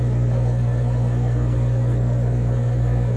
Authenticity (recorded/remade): remade